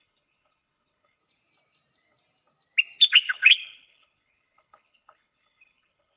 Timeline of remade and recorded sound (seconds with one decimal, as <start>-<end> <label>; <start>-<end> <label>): 0.0-1.2 remade; 1.2-3.1 recorded; 3.1-6.2 remade